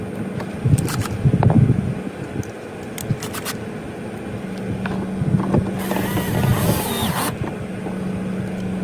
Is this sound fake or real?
real